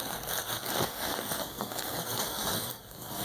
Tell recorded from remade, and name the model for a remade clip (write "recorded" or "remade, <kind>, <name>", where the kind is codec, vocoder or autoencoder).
remade, codec, SNAC